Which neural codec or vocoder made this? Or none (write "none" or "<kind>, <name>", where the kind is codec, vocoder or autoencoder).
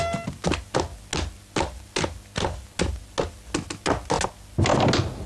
none